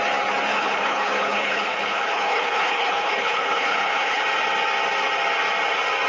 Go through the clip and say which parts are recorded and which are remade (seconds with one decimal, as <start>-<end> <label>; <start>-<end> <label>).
0.0-0.5 recorded; 0.5-4.2 remade; 4.2-6.1 recorded